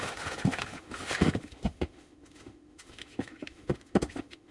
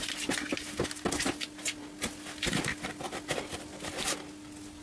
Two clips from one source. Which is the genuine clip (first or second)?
second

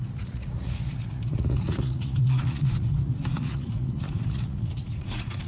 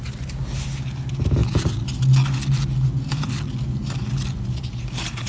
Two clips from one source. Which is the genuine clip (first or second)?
second